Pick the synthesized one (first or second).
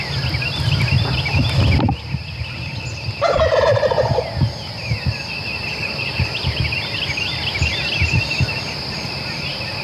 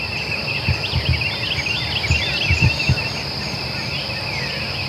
first